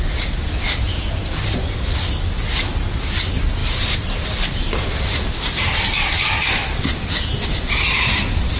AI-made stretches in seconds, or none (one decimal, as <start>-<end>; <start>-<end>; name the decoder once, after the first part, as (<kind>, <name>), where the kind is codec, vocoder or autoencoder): none